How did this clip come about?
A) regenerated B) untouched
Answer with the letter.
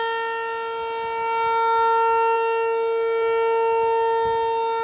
B